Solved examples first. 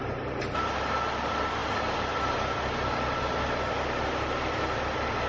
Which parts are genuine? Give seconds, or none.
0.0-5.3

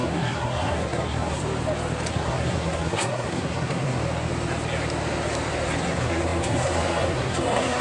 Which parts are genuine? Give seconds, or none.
1.4-2.1; 4.0-5.8

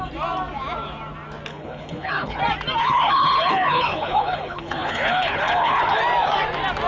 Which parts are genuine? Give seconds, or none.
0.0-1.5; 2.4-2.8; 6.0-6.9

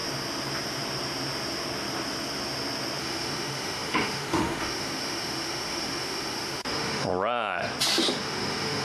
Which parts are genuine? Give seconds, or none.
0.0-3.0; 7.1-8.1

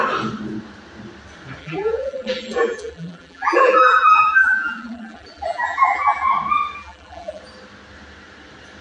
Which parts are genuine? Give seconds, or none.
0.0-1.6; 6.3-6.8; 7.4-8.8